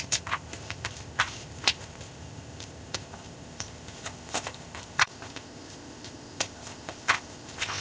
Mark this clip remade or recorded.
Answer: remade